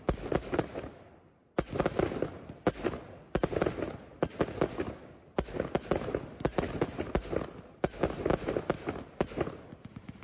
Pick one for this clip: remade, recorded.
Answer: recorded